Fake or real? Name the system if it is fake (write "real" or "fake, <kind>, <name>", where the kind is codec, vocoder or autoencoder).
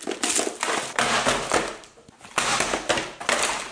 real